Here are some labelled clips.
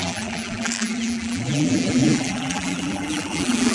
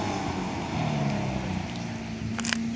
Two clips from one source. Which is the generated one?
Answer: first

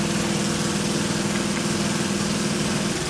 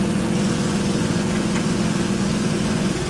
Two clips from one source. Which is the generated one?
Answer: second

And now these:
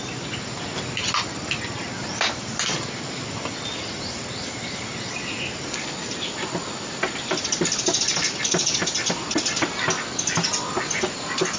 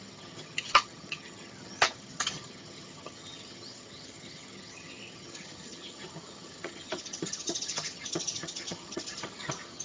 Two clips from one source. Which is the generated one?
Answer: second